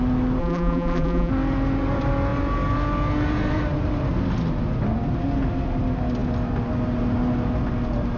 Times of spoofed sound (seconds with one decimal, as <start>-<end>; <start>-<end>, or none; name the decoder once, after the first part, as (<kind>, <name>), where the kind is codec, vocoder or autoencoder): 0.4-1.3 (vocoder, BigVGAN v2)